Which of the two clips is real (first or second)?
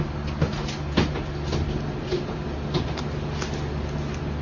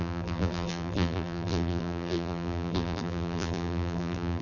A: first